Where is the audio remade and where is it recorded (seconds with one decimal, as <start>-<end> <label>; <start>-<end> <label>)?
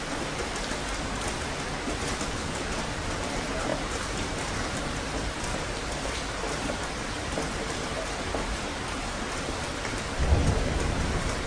0.0-11.5 remade